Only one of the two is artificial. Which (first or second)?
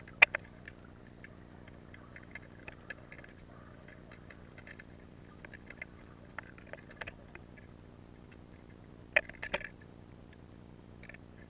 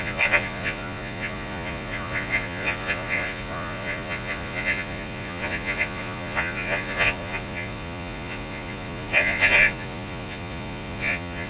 second